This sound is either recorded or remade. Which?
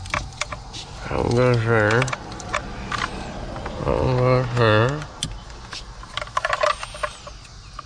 recorded